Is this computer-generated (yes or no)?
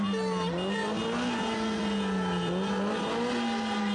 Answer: no